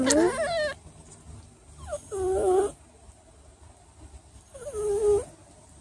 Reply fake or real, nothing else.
real